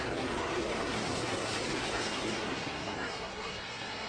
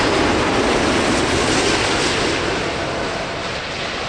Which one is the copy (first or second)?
first